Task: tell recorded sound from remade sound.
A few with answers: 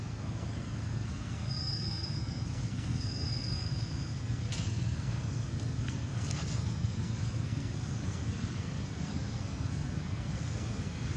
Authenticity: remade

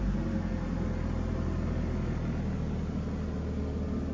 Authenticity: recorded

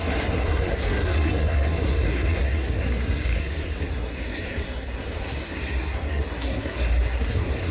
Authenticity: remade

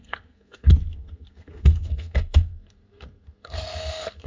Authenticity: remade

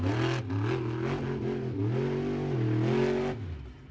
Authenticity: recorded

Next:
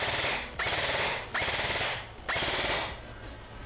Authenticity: recorded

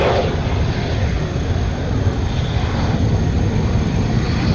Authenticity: recorded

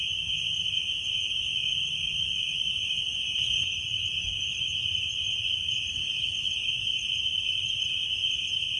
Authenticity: recorded